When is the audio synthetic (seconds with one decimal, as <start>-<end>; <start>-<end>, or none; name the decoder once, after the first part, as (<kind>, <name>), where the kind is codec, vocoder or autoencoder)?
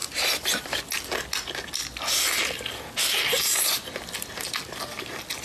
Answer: 0.0-0.8 (vocoder, BigVGAN v2)